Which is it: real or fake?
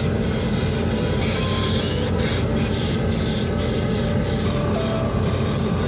real